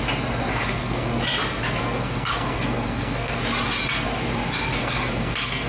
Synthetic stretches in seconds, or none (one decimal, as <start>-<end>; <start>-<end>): 0.5-1.2; 1.8-3.4; 4.8-5.7